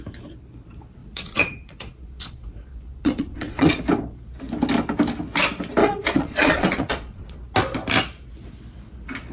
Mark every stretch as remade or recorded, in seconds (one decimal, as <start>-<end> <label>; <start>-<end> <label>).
0.0-1.0 recorded; 1.0-3.8 remade; 3.8-5.8 recorded; 5.8-7.4 remade; 7.4-9.3 recorded